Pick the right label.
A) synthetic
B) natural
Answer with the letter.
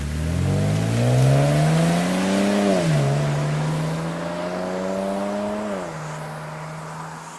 B